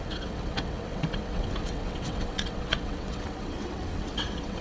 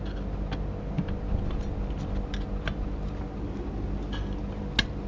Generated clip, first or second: first